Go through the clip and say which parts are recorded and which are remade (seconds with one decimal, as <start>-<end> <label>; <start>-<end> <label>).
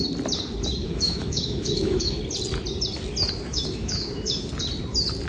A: 0.0-0.8 recorded; 0.8-2.2 remade; 2.2-3.5 recorded; 3.5-4.5 remade; 4.5-5.3 recorded